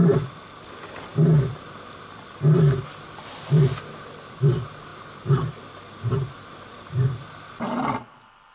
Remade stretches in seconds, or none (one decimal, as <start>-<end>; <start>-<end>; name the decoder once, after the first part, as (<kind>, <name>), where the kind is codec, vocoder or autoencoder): none

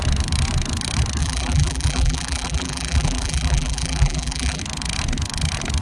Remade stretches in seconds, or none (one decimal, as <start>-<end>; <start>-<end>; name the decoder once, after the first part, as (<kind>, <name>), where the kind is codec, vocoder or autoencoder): 1.2-4.6 (vocoder, BigVGAN v2)